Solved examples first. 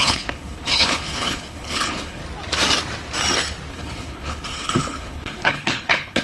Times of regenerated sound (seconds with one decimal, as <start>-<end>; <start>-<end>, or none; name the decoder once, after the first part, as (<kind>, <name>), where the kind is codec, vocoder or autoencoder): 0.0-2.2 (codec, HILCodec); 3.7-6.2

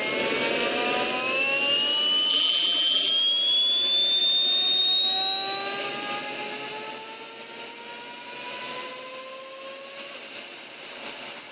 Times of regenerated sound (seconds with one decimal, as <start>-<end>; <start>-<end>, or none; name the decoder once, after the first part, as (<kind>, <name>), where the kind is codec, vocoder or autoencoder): 2.3-3.1 (vocoder, BigVGAN v2)

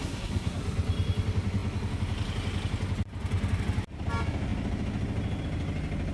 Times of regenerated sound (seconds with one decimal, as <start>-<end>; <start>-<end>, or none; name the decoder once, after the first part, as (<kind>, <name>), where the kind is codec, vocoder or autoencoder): 0.0-0.6 (codec, SNAC)

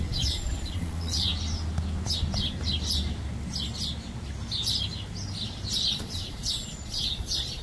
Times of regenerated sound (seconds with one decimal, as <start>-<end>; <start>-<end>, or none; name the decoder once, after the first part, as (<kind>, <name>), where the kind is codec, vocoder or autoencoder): 0.0-1.3 (vocoder, Vocos); 5.9-7.6